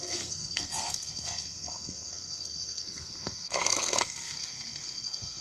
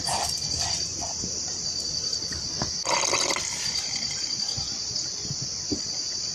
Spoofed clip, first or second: first